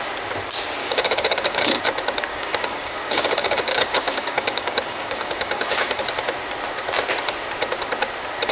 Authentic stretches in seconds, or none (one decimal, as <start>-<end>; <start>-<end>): 0.0-0.8; 1.8-2.3; 6.0-8.5